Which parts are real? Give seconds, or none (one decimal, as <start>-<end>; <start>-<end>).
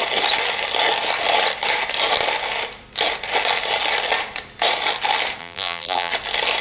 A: 0.0-5.4; 6.1-6.6